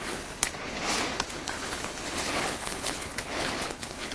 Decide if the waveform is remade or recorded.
remade